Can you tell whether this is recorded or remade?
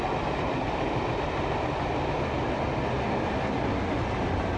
recorded